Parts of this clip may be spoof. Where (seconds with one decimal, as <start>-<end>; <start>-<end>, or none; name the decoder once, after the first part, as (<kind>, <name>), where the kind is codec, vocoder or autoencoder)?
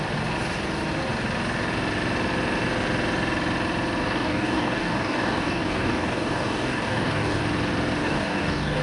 4.0-7.4 (codec, DAC); 8.0-8.8